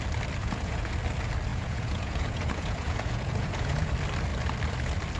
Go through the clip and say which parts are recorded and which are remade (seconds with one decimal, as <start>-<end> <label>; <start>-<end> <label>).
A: 0.0-0.4 recorded; 0.4-0.9 remade; 0.9-1.5 recorded; 1.5-3.9 remade; 3.9-5.2 recorded